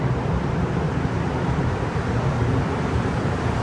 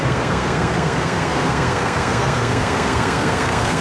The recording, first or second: first